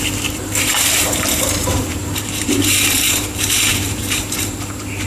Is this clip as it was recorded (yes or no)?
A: no